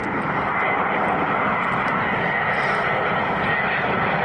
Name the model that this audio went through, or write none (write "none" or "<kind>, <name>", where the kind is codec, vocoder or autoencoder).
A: none